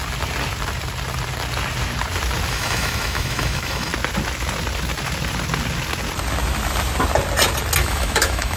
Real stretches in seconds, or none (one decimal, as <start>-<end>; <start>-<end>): 0.0-2.5; 3.9-7.8